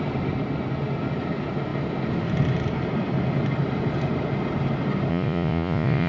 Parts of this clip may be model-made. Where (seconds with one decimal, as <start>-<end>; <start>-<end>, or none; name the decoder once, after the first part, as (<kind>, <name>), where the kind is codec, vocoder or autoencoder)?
5.1-6.1 (vocoder, Vocos)